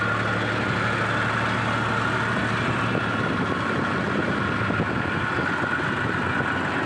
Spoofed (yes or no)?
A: no